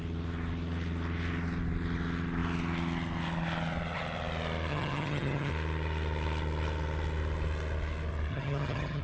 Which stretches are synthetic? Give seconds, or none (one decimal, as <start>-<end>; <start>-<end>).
4.7-5.5; 8.3-9.0